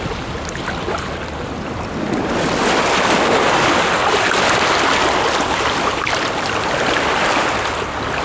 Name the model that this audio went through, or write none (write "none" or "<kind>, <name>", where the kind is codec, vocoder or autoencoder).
none